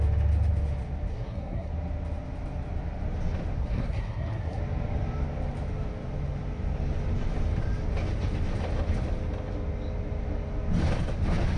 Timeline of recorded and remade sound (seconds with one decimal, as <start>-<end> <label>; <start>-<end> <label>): 0.0-1.1 recorded; 1.1-1.7 remade; 1.7-3.6 recorded; 3.6-4.6 remade; 4.6-11.6 recorded